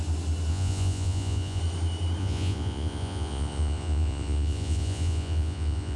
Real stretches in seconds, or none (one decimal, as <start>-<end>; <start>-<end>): 0.0-0.5; 1.6-2.2